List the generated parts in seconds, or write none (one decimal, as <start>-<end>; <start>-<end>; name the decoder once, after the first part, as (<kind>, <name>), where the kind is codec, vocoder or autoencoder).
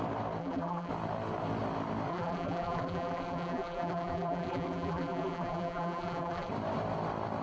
0.4-0.9 (vocoder, BigVGAN v2); 2.1-6.5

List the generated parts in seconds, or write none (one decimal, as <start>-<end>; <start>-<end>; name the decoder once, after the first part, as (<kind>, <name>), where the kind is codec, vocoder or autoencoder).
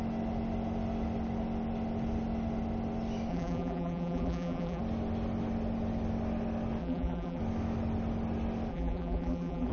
3.3-4.8 (vocoder, BigVGAN v2); 6.8-7.4; 8.7-9.7